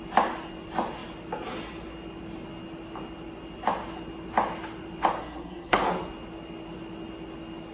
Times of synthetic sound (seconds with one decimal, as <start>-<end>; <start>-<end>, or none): 5.2-5.8